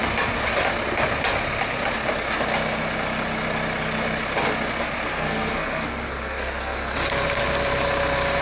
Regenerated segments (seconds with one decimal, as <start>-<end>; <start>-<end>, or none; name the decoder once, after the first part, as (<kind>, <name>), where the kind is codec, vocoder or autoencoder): 5.1-6.8 (codec, SNAC)